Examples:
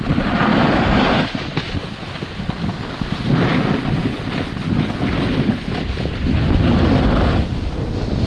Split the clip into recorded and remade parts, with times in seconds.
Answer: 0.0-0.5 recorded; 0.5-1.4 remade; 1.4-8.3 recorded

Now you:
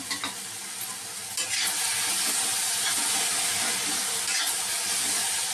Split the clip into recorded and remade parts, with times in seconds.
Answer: 0.0-5.5 recorded

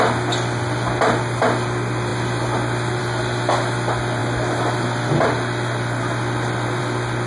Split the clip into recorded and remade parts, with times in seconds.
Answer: 0.0-7.3 recorded

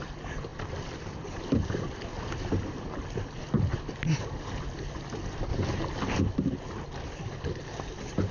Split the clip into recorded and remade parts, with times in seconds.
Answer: 0.0-0.5 recorded; 0.5-3.7 remade; 3.7-8.3 recorded

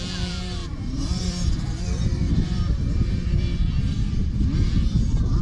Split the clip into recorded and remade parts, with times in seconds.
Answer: 0.0-5.4 remade

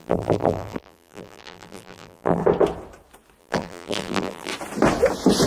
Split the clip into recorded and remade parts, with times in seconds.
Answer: 0.0-2.4 remade; 2.4-3.4 recorded; 3.4-4.5 remade; 4.5-5.5 recorded

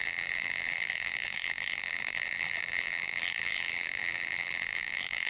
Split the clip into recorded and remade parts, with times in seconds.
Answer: 0.0-5.3 remade

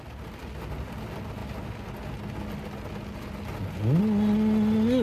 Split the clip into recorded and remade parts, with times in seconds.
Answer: 0.0-5.0 recorded